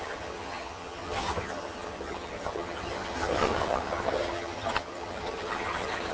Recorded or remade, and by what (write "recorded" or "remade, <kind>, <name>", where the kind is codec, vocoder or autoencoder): remade, vocoder, HiFi-GAN